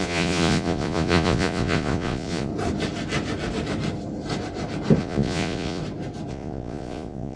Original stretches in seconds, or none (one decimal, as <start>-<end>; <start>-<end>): 2.5-5.0; 5.8-6.3